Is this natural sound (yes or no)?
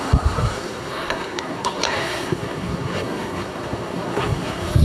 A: no